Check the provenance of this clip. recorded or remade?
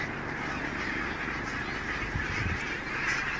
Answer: recorded